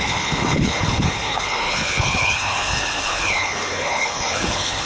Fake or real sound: fake